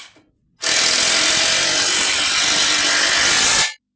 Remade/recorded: recorded